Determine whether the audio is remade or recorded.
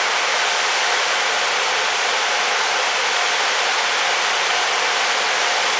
recorded